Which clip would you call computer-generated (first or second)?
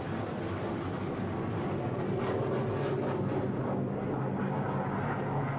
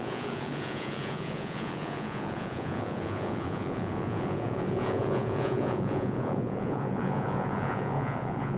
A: second